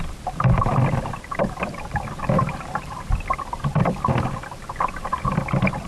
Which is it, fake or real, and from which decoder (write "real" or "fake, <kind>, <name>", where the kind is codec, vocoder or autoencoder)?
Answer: fake, vocoder, BigVGAN v2